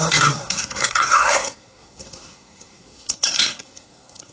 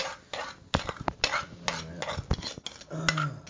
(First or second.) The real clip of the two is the second